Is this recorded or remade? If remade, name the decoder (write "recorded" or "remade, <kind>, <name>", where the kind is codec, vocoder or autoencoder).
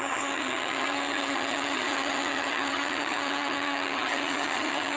remade, vocoder, HiFi-GAN